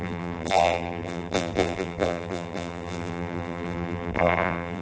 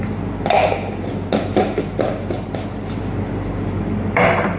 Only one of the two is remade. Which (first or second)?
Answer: first